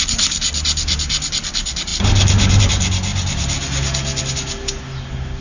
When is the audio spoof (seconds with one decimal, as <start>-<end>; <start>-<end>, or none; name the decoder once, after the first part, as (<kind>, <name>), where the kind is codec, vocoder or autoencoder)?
none